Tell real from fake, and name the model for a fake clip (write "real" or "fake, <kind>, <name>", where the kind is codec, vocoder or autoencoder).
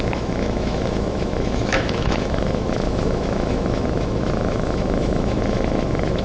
fake, autoencoder, DAC-VAE